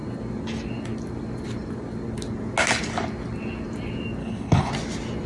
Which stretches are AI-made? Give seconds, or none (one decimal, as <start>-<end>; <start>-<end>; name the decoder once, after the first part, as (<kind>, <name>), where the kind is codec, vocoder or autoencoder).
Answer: 4.2-4.7 (codec, HILCodec)